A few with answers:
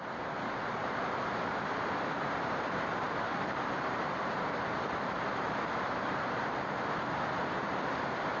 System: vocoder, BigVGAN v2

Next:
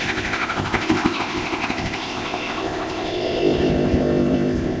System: codec, ZipCodec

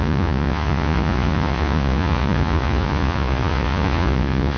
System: vocoder, Vocos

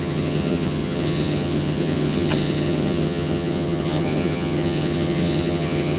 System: vocoder, HiFi-GAN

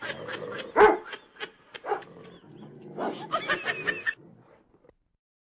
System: none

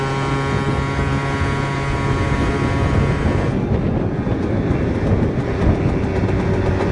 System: none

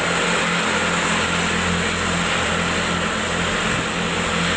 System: none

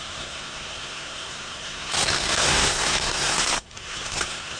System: codec, SNAC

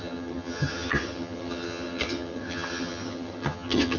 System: vocoder, HiFi-GAN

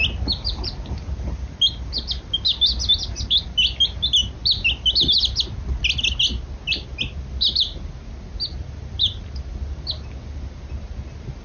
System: none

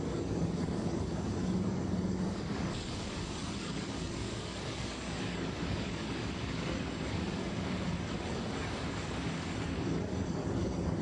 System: codec, DAC